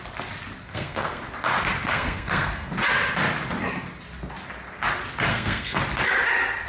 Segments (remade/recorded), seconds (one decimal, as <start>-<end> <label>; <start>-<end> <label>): 0.0-0.6 recorded; 0.6-1.2 remade; 1.2-1.9 recorded; 1.9-2.7 remade; 2.7-5.3 recorded; 5.3-5.8 remade; 5.8-6.7 recorded